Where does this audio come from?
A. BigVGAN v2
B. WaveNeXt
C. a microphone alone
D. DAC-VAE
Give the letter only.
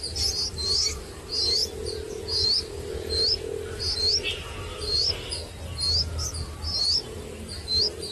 C